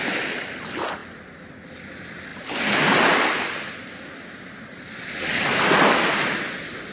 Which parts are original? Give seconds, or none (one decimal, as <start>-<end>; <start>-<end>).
0.0-6.9